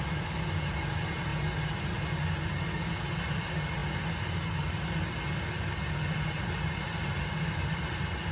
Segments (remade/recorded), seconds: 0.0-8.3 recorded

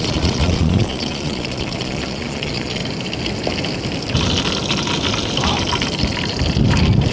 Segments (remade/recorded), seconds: 0.0-2.8 remade; 2.8-7.1 recorded

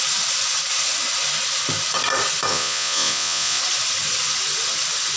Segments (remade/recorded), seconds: 0.0-2.5 recorded; 2.5-3.6 remade; 3.6-5.2 recorded

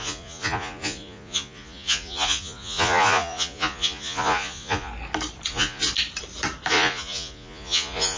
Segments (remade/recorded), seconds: 0.0-4.9 remade; 4.9-5.5 recorded; 5.5-5.9 remade; 5.9-6.7 recorded; 6.7-8.2 remade

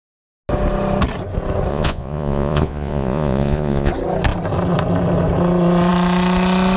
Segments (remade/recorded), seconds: 0.0-1.7 recorded; 1.7-3.9 remade; 3.9-6.8 recorded

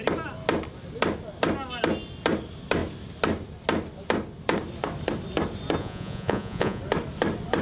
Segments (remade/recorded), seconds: 0.0-5.8 recorded; 5.8-6.8 remade; 6.8-7.6 recorded

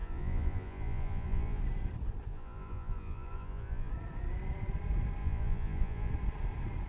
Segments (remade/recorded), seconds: 0.0-1.6 remade; 1.6-2.3 recorded; 2.3-3.9 remade; 3.9-5.2 recorded; 5.2-6.1 remade; 6.1-6.9 recorded

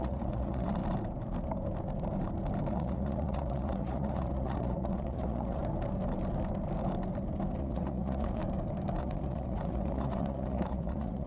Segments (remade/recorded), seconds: 0.0-0.8 remade; 0.8-2.7 recorded; 2.7-5.6 remade; 5.6-7.6 recorded; 7.6-8.4 remade; 8.4-9.0 recorded; 9.0-11.3 remade